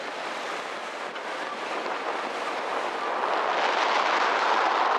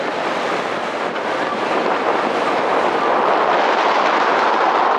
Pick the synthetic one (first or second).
second